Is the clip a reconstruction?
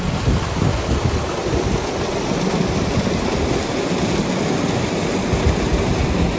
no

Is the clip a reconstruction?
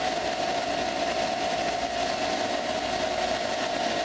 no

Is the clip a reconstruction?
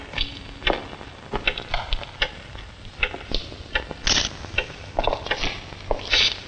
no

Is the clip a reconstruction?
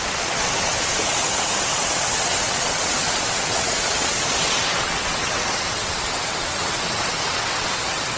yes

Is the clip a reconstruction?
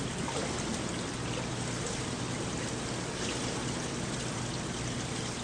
no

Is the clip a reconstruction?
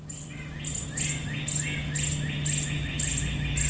no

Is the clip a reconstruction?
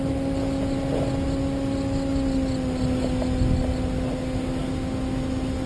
no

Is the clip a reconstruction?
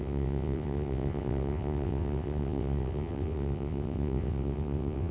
yes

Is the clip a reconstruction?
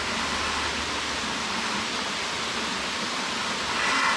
no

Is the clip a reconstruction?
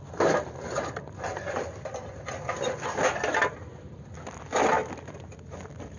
no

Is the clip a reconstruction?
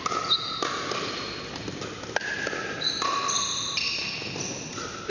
no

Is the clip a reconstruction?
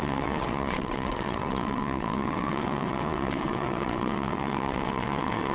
yes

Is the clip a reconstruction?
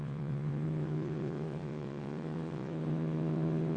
yes